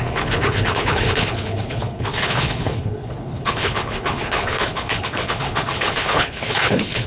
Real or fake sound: fake